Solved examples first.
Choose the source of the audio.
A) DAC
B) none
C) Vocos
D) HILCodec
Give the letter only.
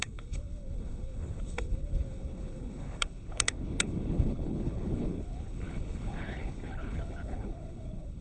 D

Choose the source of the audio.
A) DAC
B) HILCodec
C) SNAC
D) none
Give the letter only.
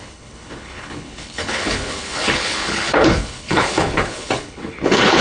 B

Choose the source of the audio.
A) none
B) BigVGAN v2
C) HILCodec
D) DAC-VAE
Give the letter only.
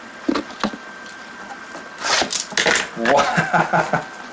A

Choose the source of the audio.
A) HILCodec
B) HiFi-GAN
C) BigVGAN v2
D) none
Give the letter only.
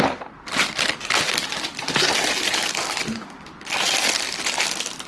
D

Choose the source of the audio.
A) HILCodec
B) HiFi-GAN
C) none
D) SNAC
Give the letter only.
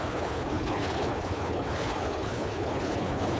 A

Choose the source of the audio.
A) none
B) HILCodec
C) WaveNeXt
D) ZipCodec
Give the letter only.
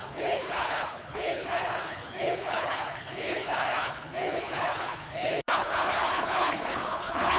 B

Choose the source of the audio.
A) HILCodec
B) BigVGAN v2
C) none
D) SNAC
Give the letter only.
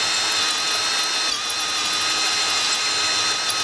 C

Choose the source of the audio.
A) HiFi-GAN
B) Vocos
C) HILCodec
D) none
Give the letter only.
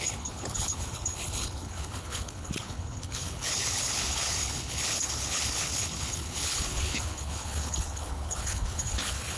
C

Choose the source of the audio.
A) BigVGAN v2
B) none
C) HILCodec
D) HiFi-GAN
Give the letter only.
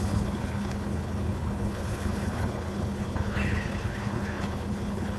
C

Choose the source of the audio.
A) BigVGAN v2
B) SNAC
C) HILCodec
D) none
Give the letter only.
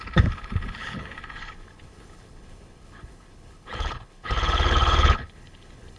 C